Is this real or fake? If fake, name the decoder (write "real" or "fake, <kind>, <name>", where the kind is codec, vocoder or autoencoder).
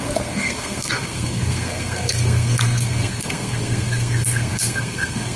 fake, codec, SNAC